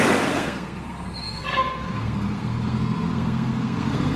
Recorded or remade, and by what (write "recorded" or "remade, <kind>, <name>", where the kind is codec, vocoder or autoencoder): remade, codec, SNAC